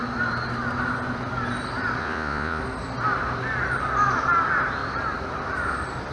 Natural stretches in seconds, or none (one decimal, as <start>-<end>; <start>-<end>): 0.0-2.0; 2.6-6.1